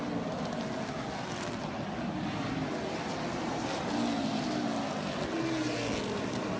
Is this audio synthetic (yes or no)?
no